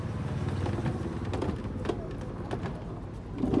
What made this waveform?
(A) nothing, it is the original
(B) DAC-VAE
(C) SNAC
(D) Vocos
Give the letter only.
A